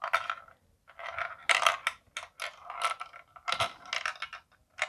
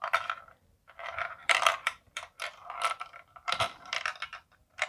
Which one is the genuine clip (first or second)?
first